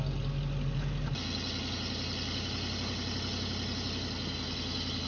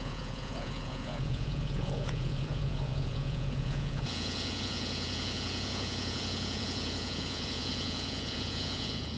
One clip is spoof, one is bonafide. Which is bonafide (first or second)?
first